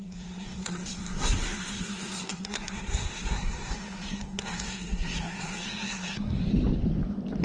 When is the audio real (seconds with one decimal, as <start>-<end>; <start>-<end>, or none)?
6.4-7.4

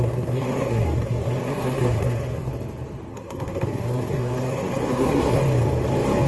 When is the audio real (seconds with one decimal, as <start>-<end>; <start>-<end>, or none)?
2.5-3.1; 5.4-6.3

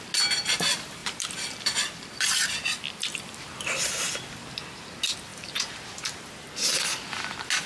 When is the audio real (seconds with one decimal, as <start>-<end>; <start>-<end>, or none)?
0.0-1.0; 4.7-5.3; 6.5-7.7

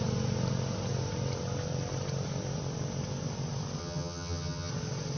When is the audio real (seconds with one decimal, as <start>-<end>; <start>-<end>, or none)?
0.0-3.8; 4.7-5.2